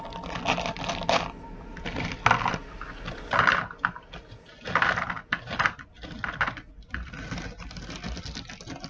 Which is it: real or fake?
real